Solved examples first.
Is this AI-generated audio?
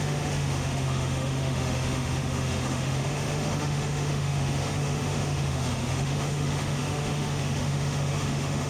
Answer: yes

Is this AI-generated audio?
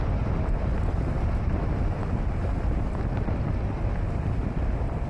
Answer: no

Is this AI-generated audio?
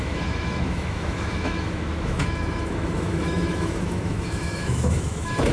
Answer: yes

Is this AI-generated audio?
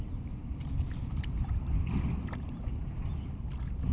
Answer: no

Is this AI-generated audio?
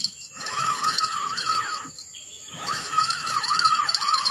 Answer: yes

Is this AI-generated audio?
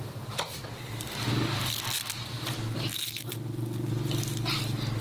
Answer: no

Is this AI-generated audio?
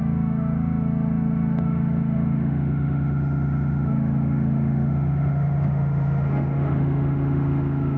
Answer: yes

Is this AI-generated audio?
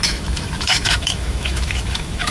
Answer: yes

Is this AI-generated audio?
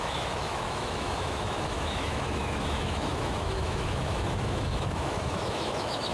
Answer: yes